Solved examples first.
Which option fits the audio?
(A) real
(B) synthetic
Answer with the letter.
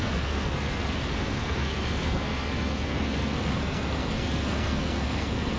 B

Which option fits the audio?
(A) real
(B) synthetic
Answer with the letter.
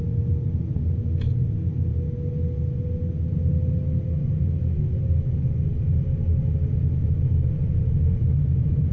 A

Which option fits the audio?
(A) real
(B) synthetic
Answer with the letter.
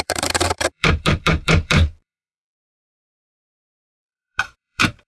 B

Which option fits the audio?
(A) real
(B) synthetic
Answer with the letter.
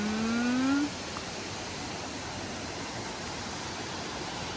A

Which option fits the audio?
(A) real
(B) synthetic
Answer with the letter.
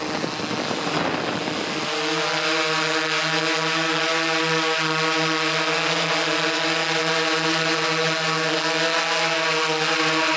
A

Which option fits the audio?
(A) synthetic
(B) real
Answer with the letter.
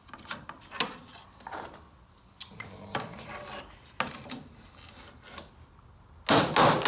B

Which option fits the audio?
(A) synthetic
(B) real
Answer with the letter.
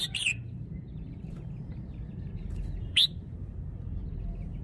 A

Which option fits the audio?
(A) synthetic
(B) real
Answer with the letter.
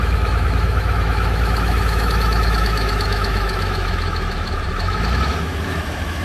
A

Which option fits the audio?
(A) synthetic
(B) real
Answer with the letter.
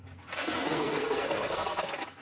A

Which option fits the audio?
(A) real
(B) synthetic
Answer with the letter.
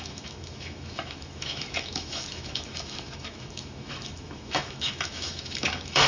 B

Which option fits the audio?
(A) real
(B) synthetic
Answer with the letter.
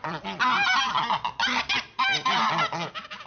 A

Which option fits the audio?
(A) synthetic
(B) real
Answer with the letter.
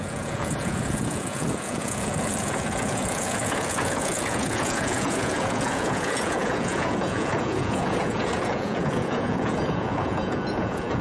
A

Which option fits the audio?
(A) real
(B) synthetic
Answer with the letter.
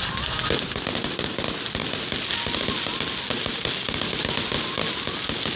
A